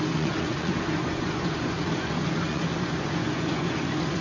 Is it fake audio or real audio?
fake